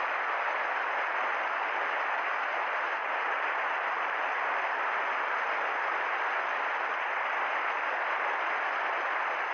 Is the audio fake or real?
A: real